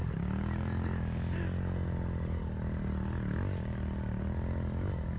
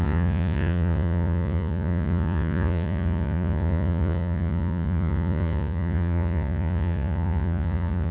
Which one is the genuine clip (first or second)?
first